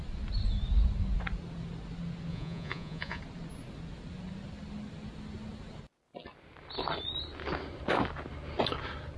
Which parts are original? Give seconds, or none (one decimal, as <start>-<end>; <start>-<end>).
0.0-2.3; 3.2-9.2